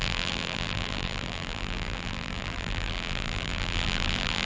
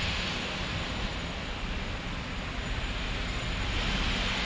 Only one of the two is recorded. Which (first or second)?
second